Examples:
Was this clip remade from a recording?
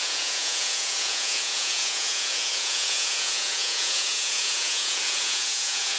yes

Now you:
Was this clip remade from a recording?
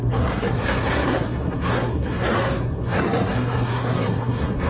yes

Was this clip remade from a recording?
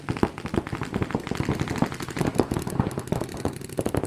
no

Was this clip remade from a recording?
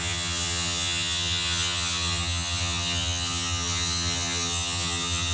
yes